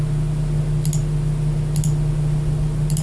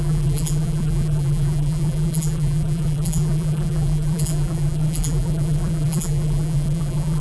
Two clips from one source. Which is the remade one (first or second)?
second